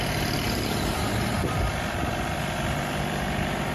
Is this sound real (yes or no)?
no